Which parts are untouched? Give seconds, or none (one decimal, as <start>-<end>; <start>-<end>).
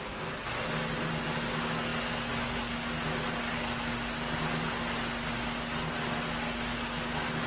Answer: 0.0-7.5